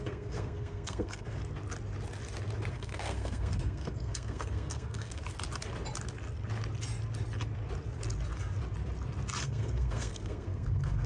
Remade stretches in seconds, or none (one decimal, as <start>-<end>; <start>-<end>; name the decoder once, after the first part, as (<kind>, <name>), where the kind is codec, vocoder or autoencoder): 0.0-1.4 (codec, SNAC); 2.7-5.2; 9.4-11.1